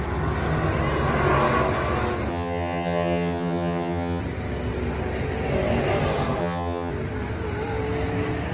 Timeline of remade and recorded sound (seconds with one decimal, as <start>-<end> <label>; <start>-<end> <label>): 0.0-2.3 recorded; 2.3-4.2 remade; 4.2-6.4 recorded; 6.4-6.9 remade; 6.9-8.5 recorded